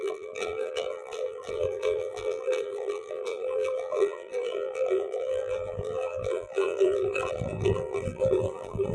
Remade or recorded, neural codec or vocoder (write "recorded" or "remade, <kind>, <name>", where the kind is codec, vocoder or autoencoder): remade, vocoder, BigVGAN v2